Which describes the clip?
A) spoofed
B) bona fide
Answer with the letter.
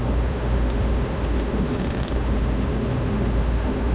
A